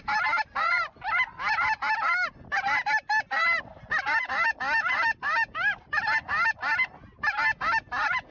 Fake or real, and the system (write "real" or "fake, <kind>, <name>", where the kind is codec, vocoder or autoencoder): real